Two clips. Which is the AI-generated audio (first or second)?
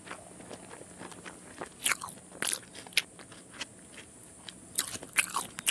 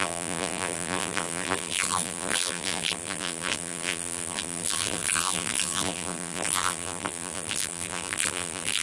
second